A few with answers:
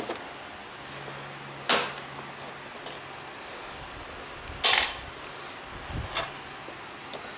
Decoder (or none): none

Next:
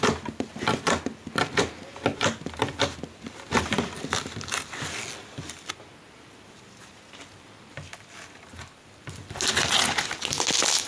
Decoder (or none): none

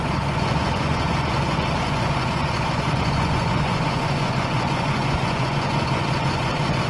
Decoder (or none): vocoder, Vocos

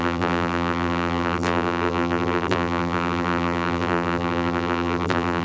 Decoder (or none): vocoder, BigVGAN v2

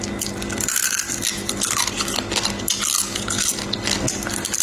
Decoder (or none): none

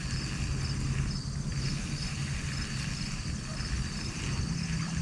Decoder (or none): none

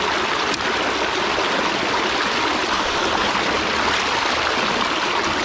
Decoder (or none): none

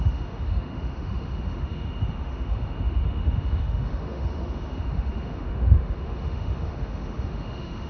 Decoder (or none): autoencoder, DAC-VAE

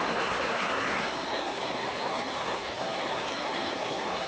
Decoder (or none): codec, SNAC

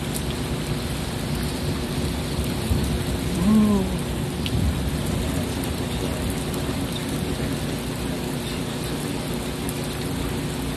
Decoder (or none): none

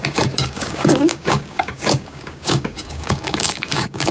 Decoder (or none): codec, DAC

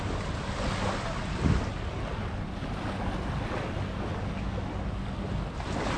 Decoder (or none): none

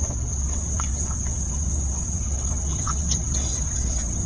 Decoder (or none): vocoder, WaveNeXt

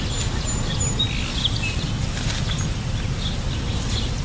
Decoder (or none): none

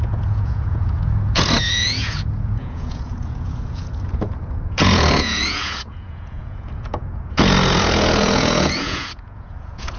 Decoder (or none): vocoder, Vocos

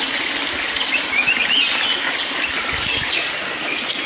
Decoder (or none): none